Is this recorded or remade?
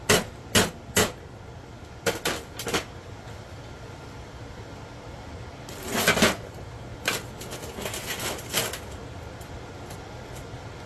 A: recorded